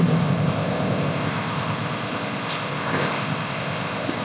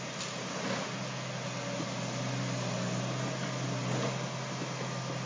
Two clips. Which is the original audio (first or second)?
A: second